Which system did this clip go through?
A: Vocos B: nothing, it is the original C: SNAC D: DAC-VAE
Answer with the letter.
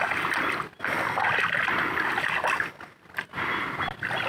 B